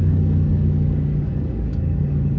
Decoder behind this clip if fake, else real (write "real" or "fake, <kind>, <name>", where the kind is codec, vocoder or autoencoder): fake, codec, DAC